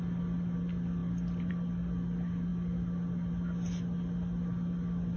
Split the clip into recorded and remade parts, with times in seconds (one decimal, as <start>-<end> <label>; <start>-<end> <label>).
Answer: 0.0-5.2 recorded